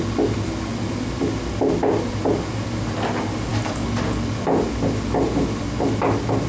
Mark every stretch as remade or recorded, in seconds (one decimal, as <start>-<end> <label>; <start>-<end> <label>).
0.0-6.5 recorded